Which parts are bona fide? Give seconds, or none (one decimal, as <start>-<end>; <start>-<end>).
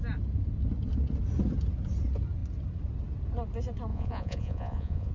0.0-3.9